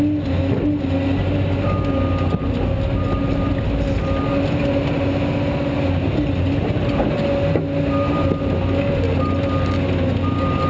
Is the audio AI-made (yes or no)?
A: no